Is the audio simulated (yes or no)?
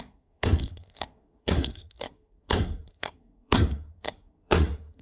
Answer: yes